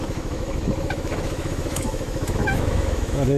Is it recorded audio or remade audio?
remade